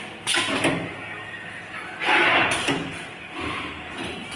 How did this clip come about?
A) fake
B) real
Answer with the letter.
B